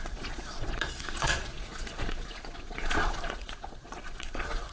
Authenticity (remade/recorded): remade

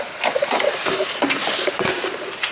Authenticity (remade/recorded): recorded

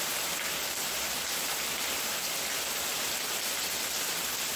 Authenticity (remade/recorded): recorded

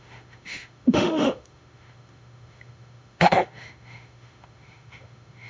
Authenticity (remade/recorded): remade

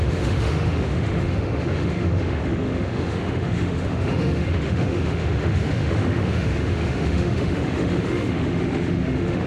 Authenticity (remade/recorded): remade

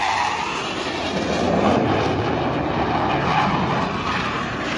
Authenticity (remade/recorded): recorded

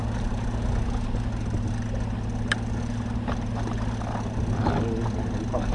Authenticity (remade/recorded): recorded